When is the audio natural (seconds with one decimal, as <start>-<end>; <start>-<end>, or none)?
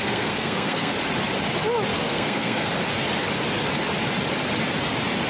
0.9-1.9; 2.7-5.3